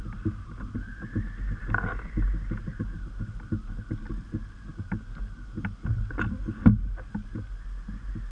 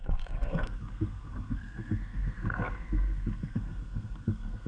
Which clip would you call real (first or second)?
first